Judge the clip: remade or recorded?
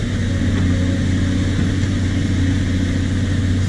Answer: recorded